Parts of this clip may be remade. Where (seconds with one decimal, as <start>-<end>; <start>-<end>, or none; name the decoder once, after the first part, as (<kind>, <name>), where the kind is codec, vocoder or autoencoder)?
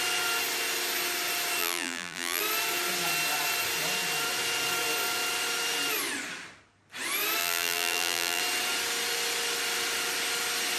1.6-2.4 (vocoder, BigVGAN v2); 7.4-8.4